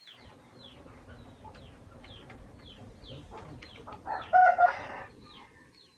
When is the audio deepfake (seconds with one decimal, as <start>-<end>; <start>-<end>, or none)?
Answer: none